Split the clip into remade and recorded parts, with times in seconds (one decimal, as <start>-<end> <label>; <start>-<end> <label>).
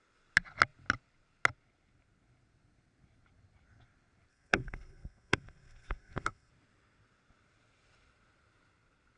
0.0-4.3 recorded; 4.3-6.5 remade; 6.5-9.2 recorded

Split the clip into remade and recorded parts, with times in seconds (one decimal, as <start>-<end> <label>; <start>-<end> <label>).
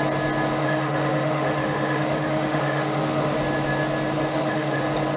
0.0-0.6 recorded; 0.6-3.4 remade; 3.4-4.3 recorded; 4.3-4.8 remade; 4.8-5.2 recorded